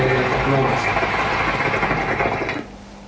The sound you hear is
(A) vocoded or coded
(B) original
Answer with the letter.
B